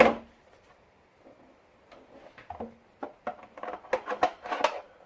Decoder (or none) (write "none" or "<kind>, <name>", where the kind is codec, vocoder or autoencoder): none